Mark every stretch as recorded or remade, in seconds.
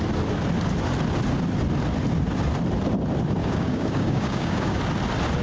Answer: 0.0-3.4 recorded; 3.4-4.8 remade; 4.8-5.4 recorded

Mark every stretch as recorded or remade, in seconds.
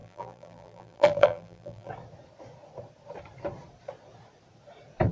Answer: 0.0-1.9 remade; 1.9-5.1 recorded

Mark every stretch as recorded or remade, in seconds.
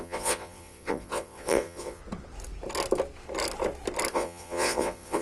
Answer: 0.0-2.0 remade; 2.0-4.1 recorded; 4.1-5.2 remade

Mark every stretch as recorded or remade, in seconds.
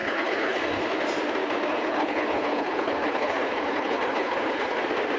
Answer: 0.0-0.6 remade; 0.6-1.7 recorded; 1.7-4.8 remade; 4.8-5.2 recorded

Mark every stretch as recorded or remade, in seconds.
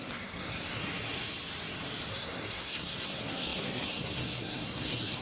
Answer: 0.0-0.8 remade; 0.8-2.1 recorded; 2.1-5.2 remade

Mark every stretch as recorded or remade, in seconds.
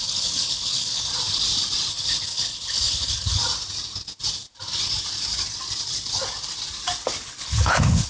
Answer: 0.0-1.1 remade; 1.1-1.9 recorded; 1.9-3.4 remade; 3.4-7.4 recorded; 7.4-8.1 remade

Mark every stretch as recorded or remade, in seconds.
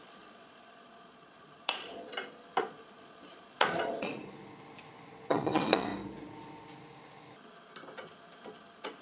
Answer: 0.0-2.1 remade; 2.1-2.6 recorded; 2.6-4.4 remade; 4.4-5.1 recorded; 5.1-5.9 remade; 5.9-9.0 recorded